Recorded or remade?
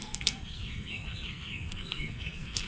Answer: remade